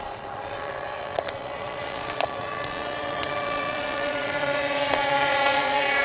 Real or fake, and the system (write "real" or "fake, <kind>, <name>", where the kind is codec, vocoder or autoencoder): fake, vocoder, Vocos